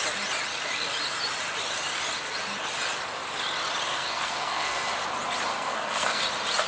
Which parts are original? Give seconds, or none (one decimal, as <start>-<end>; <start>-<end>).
0.0-3.9; 4.9-5.5; 6.2-6.7